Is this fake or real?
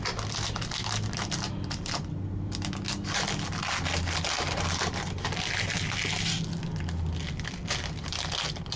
real